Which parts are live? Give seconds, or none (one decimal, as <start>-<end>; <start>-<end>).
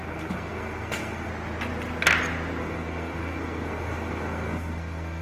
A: 1.3-2.6